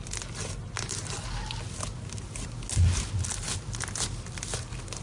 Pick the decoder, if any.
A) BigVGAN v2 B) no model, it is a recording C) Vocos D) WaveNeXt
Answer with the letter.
B